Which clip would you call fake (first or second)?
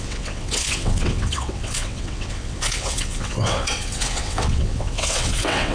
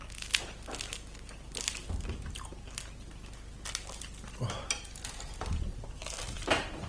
first